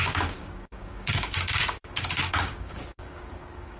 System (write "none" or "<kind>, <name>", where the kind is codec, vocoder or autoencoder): codec, DAC